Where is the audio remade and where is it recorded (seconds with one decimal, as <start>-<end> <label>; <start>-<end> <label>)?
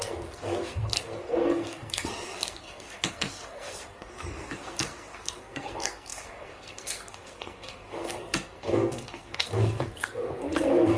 0.0-11.0 remade